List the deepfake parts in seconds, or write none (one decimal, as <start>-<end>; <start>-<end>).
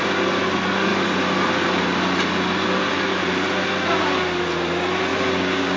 5.1-5.8